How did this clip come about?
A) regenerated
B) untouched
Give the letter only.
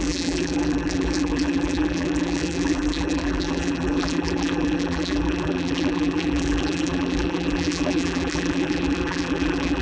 A